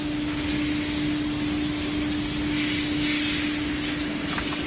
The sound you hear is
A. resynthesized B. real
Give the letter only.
B